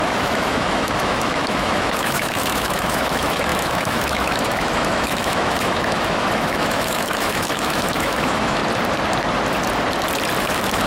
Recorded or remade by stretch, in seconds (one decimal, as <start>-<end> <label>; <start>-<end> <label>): 0.0-8.6 remade; 8.6-10.4 recorded; 10.4-10.9 remade